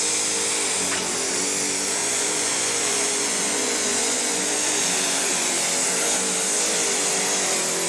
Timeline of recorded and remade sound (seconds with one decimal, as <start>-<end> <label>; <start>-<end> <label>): 0.0-2.0 recorded; 2.0-5.5 remade; 5.5-7.9 recorded